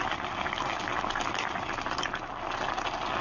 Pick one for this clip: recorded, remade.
recorded